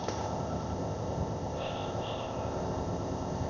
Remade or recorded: remade